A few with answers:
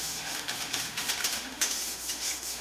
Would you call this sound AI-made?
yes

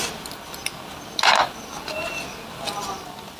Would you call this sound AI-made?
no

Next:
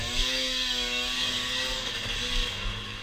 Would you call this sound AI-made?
yes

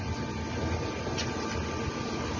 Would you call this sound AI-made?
no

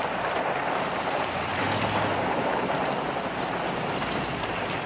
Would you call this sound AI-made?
yes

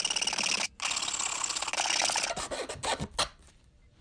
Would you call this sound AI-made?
no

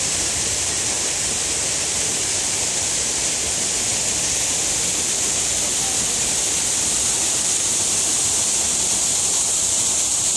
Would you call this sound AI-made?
yes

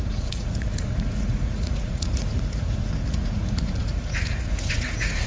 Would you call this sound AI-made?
yes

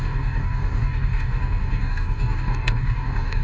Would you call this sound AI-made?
yes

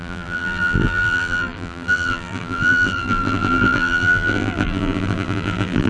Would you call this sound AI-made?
yes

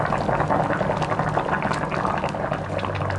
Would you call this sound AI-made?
no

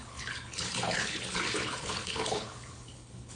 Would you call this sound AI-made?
yes